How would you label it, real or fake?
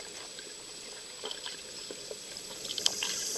real